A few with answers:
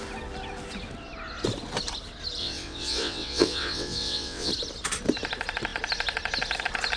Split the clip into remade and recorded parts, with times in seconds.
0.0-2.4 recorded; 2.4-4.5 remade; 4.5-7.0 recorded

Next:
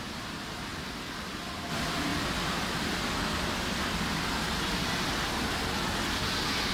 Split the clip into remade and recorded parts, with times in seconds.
0.0-6.7 recorded

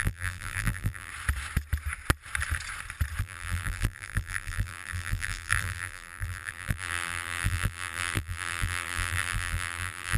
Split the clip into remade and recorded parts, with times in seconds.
0.0-1.1 remade; 1.1-3.2 recorded; 3.2-10.2 remade

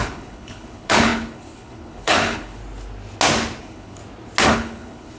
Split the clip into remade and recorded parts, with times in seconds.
0.0-2.6 remade; 2.6-3.6 recorded; 3.6-4.0 remade; 4.0-4.5 recorded; 4.5-5.2 remade

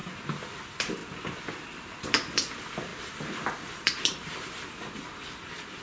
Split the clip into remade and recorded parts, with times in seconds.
0.0-0.6 recorded; 0.6-1.0 remade; 1.0-2.0 recorded; 2.0-5.8 remade

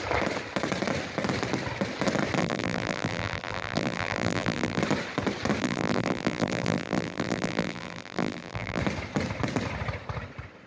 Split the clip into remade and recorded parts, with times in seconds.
0.0-2.4 recorded; 2.4-4.8 remade; 4.8-5.6 recorded; 5.6-8.8 remade; 8.8-10.7 recorded

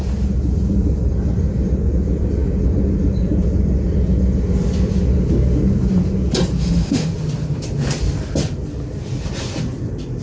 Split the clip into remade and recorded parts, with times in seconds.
0.0-6.6 recorded; 6.6-7.1 remade; 7.1-10.2 recorded

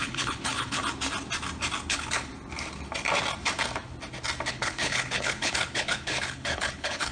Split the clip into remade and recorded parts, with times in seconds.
0.0-0.8 remade; 0.8-1.9 recorded; 1.9-2.3 remade; 2.3-4.5 recorded; 4.5-7.1 remade